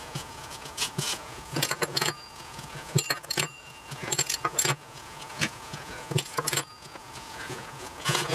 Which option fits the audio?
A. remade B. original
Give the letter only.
A